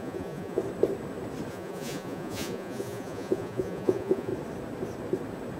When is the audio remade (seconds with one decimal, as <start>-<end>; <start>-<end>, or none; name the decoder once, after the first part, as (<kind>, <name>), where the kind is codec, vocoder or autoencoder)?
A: 0.0-0.6 (vocoder, Vocos); 1.5-4.3